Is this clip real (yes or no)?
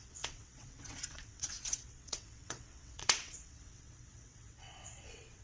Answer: no